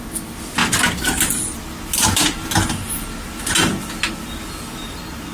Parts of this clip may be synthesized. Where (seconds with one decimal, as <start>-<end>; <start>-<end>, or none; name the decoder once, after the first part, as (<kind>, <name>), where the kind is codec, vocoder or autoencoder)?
none